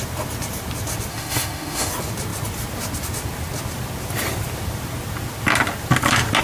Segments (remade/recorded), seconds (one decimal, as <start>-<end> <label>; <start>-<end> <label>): 0.0-1.1 recorded; 1.1-1.9 remade; 1.9-6.4 recorded